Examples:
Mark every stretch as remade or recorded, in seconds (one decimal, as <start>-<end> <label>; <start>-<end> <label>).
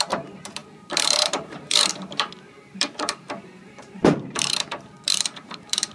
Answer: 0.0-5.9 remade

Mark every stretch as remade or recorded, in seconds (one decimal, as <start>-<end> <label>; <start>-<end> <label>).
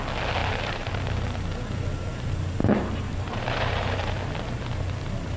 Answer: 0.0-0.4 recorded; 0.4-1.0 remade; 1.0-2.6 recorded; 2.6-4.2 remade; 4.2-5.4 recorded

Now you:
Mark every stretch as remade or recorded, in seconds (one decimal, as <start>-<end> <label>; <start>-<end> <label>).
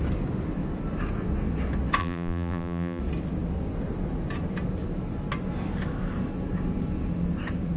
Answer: 0.0-2.0 recorded; 2.0-3.0 remade; 3.0-7.8 recorded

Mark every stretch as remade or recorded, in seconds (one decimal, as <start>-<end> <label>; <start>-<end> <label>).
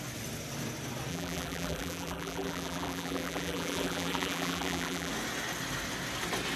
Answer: 0.0-1.1 recorded; 1.1-5.1 remade; 5.1-6.6 recorded